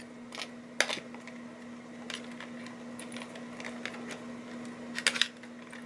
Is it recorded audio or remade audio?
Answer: recorded